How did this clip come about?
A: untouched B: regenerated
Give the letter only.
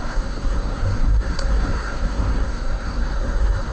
B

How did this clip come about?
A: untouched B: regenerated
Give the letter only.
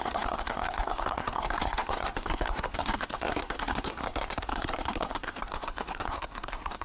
B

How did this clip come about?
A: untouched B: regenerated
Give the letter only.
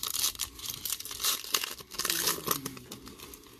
A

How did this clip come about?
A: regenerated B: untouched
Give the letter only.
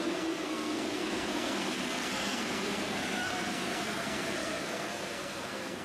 A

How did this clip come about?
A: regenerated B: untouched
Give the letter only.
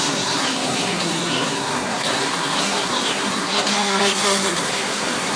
A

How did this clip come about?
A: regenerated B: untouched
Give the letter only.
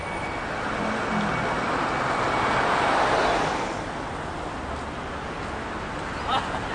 B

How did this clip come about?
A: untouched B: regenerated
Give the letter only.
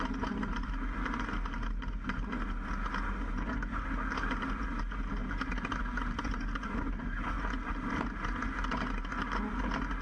A